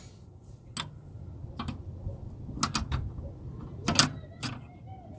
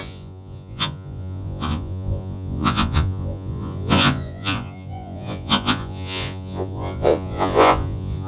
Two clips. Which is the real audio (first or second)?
first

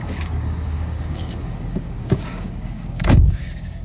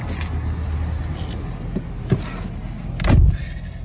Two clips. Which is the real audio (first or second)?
second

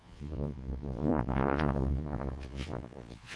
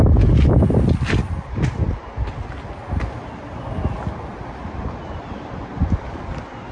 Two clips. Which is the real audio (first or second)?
second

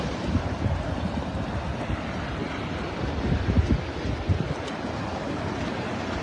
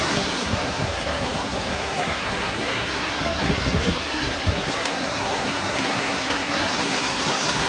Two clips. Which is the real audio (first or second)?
first